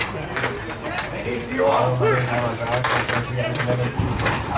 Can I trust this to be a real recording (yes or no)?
yes